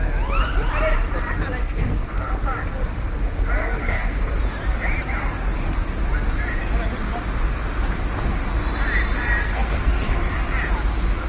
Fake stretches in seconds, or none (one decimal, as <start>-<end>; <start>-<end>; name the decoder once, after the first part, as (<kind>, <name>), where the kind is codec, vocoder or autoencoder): 1.6-2.3 (codec, SNAC); 3.6-4.4; 9.4-10.3